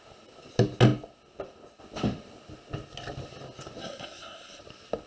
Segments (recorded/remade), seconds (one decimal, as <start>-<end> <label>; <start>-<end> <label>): 0.0-3.8 recorded; 3.8-4.6 remade; 4.6-5.1 recorded